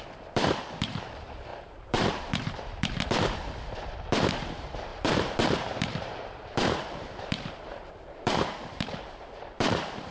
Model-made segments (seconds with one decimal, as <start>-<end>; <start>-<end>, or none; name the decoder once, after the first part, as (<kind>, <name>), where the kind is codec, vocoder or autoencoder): 0.0-10.1 (vocoder, BigVGAN v2)